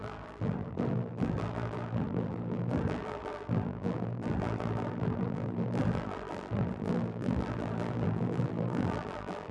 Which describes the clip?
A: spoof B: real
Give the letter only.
A